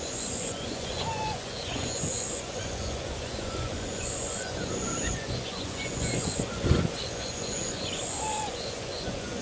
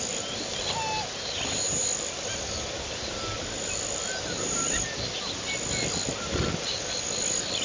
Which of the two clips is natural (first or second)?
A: second